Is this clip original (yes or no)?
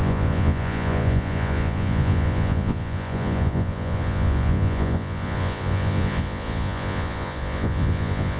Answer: no